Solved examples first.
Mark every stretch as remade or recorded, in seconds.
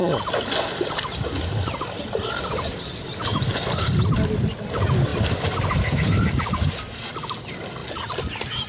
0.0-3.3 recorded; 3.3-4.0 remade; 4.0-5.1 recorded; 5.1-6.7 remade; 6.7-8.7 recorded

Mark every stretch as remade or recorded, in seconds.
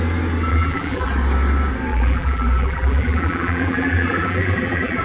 0.0-0.5 recorded; 0.5-1.1 remade; 1.1-1.9 recorded; 1.9-5.0 remade